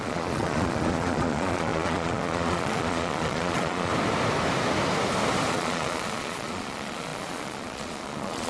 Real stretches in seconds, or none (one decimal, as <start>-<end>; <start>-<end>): 3.9-5.5